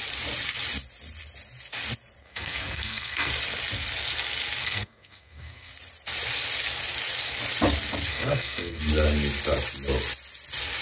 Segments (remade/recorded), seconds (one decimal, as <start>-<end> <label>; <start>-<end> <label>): 0.0-2.2 recorded; 2.2-3.3 remade; 3.3-4.6 recorded; 4.6-5.7 remade; 5.7-8.1 recorded; 8.1-8.8 remade; 8.8-10.8 recorded